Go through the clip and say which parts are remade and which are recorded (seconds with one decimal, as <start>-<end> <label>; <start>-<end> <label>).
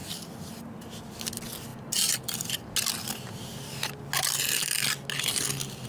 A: 0.0-5.9 recorded